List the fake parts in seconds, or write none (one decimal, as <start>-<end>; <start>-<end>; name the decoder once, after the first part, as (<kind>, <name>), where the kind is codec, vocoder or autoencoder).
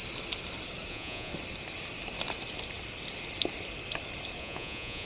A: 0.9-1.3 (vocoder, Vocos); 4.4-5.1